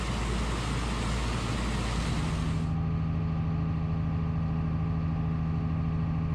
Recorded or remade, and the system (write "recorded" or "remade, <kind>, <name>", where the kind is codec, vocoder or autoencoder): recorded